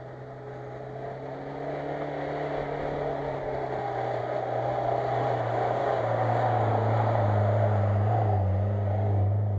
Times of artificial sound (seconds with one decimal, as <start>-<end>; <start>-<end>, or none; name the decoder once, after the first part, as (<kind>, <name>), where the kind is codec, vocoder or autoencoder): 5.8-6.7 (codec, DAC)